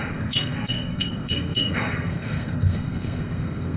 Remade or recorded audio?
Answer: remade